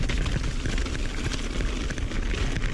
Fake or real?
real